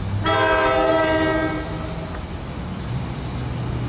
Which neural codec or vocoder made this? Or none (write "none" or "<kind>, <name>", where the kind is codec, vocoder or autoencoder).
none